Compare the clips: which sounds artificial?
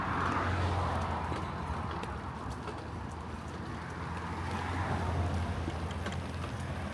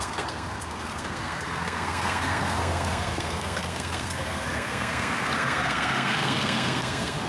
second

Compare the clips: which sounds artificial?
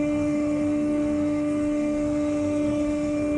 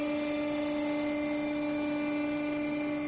first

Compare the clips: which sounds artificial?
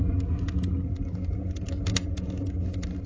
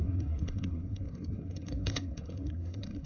second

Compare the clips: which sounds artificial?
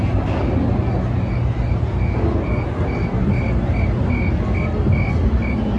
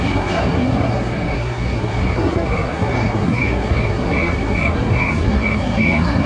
second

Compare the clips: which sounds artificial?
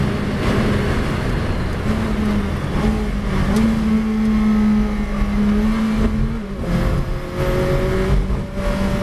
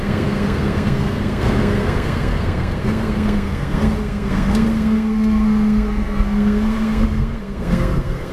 second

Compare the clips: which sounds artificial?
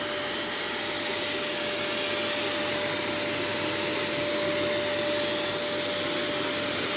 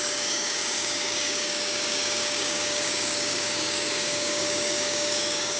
second